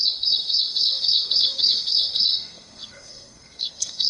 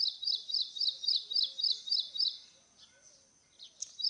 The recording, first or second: second